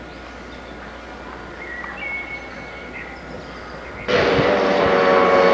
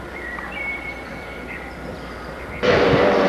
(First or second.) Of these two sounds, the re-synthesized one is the second